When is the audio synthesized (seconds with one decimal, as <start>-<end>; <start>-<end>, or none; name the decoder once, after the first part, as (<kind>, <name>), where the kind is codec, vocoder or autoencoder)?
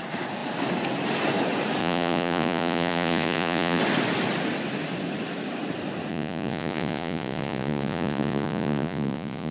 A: 1.8-3.8 (vocoder, Vocos); 6.1-9.5